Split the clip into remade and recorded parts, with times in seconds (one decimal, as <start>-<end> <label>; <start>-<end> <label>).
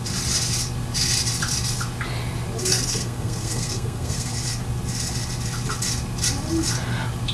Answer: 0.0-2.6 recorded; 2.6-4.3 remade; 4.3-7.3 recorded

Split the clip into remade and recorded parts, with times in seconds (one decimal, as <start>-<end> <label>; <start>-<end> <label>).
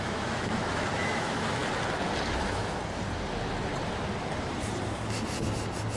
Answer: 0.0-1.6 remade; 1.6-2.3 recorded; 2.3-2.8 remade; 2.8-6.0 recorded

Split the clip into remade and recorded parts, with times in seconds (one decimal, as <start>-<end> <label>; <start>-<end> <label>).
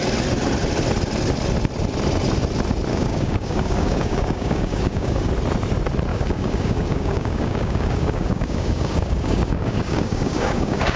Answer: 0.0-2.9 recorded; 2.9-5.3 remade; 5.3-6.1 recorded; 6.1-11.0 remade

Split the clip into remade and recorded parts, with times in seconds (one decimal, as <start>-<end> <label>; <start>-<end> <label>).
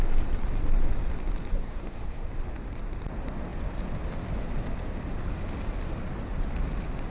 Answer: 0.0-1.5 recorded; 1.5-2.3 remade; 2.3-7.1 recorded